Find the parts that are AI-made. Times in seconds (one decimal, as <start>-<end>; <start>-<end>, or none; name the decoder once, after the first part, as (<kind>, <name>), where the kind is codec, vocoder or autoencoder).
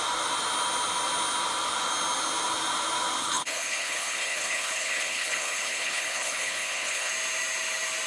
3.2-7.1 (codec, HILCodec)